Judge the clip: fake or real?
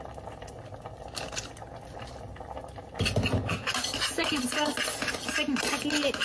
real